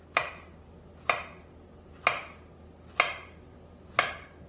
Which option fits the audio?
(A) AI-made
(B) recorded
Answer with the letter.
B